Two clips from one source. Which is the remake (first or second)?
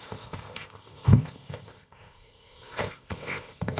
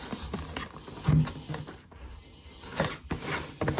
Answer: first